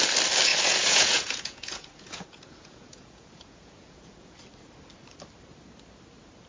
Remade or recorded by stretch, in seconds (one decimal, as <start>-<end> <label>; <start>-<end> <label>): 0.0-0.5 recorded; 0.5-4.4 remade; 4.4-6.5 recorded